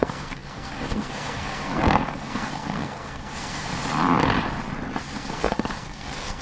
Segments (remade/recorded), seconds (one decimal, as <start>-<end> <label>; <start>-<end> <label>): 0.0-3.7 remade; 3.7-5.0 recorded; 5.0-6.4 remade